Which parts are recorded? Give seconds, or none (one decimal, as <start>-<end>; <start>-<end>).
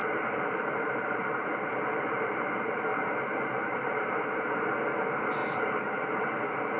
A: 4.1-5.4; 6.2-6.8